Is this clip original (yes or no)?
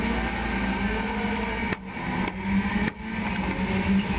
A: yes